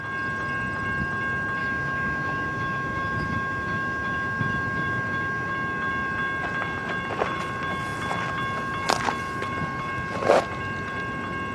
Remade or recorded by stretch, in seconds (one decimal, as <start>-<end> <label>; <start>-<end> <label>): 0.0-1.6 recorded; 1.6-5.5 remade; 5.5-11.5 recorded